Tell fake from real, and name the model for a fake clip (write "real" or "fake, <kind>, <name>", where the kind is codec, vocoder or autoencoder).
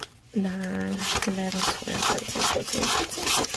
fake, vocoder, Vocos